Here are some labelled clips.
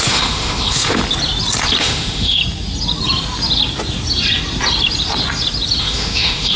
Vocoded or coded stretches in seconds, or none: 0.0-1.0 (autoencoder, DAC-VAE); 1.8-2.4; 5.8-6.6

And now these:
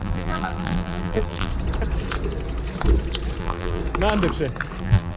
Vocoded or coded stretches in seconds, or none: 0.0-1.5 (vocoder, BigVGAN v2); 3.4-3.8; 4.8-5.2

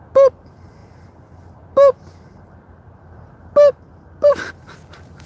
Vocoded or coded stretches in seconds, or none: none

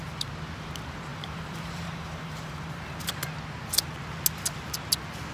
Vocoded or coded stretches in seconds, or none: 1.1-3.1 (vocoder, BigVGAN v2)

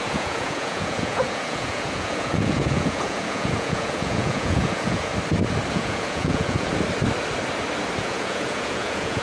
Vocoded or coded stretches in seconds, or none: 0.0-5.1 (vocoder, Vocos); 5.7-6.7; 8.0-9.2

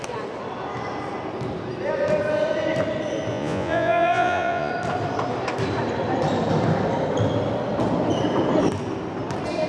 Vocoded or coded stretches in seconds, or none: 3.3-4.7 (vocoder, Vocos)

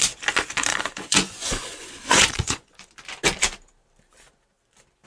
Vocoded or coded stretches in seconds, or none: 0.7-2.9 (vocoder, Vocos)